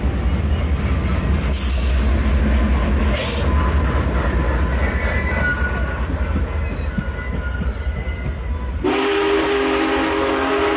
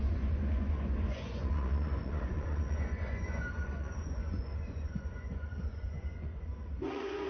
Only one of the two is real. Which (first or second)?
first